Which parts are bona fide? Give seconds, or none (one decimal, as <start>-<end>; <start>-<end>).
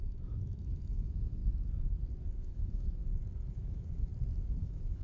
1.4-2.4; 3.0-3.5; 4.1-4.6